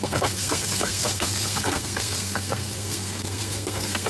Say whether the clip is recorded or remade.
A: remade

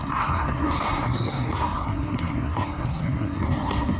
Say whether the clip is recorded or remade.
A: remade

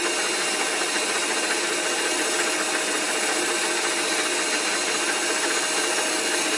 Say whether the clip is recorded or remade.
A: recorded